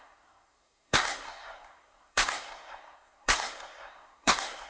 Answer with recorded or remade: remade